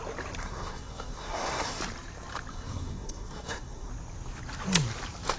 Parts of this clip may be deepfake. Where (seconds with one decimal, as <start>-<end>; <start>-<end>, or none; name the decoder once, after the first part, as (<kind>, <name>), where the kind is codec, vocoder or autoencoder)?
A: 0.4-1.8 (codec, SNAC); 2.5-3.9

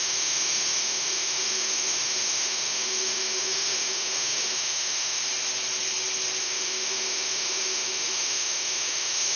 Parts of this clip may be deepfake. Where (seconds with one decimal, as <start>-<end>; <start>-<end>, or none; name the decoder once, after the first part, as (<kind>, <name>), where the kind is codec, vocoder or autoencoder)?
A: 0.0-5.2 (autoencoder, DAC-VAE); 6.4-9.4

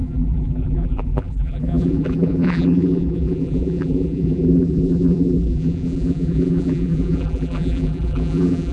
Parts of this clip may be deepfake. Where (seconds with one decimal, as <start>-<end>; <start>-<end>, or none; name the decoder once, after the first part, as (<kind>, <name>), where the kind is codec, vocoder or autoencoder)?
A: 0.0-8.7 (vocoder, BigVGAN v2)

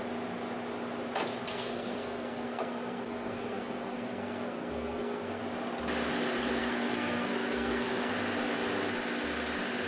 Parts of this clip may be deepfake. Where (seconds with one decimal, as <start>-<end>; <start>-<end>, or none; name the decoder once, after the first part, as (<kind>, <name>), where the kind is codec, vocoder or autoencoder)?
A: 1.4-5.4 (codec, SNAC); 6.6-8.1

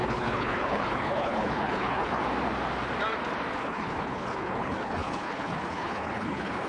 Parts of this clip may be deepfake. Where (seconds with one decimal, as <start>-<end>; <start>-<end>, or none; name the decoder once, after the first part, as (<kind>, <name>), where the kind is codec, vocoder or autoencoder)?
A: 0.0-2.2 (codec, HILCodec); 3.6-6.7